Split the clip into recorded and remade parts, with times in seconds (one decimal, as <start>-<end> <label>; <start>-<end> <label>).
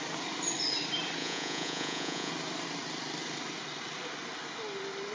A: 0.0-1.2 recorded; 1.2-2.3 remade; 2.3-5.1 recorded